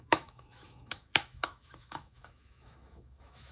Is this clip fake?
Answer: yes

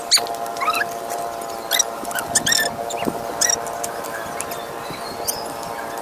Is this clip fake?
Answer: no